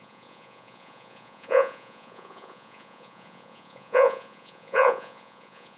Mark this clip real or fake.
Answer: fake